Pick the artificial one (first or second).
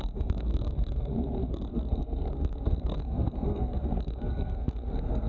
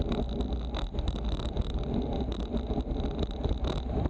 first